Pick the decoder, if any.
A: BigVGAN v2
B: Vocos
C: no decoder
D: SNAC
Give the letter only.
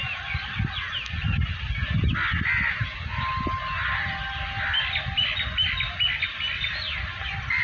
C